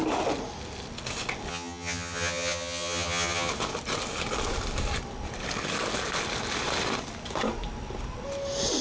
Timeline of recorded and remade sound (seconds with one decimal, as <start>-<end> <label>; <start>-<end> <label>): 0.0-1.5 recorded; 1.5-3.5 remade; 3.5-8.8 recorded